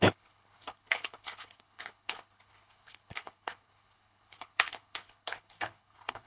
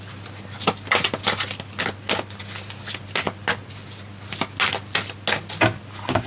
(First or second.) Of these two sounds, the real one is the second